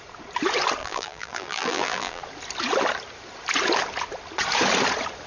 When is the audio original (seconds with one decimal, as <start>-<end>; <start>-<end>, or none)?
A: 0.0-0.8; 2.2-5.3